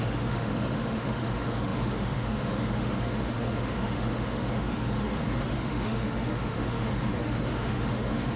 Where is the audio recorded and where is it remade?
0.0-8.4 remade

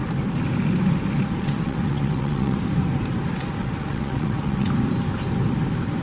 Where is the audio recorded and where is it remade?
0.0-1.4 recorded; 1.4-2.6 remade; 2.6-3.6 recorded; 3.6-4.7 remade; 4.7-6.0 recorded

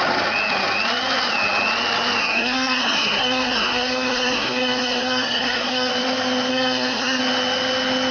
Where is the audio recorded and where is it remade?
0.0-2.2 recorded; 2.2-5.9 remade; 5.9-6.5 recorded; 6.5-7.2 remade; 7.2-8.1 recorded

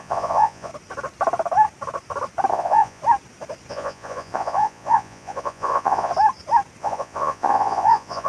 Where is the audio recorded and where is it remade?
0.0-0.7 remade; 0.7-2.5 recorded; 2.5-3.0 remade; 3.0-3.7 recorded; 3.7-6.1 remade; 6.1-6.8 recorded; 6.8-8.3 remade